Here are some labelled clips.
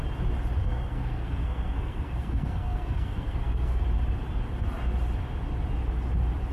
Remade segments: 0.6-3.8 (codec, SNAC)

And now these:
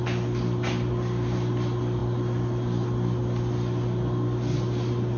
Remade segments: none

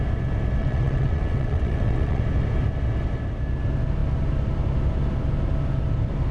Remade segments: 0.6-2.2 (vocoder, WaveNeXt)